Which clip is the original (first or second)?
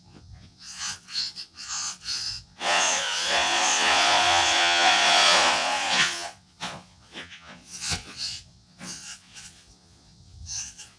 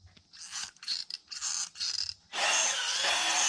second